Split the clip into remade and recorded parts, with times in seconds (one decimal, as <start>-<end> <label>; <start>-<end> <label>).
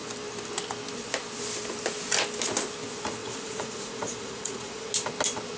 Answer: 0.0-3.2 recorded; 3.2-4.9 remade; 4.9-5.6 recorded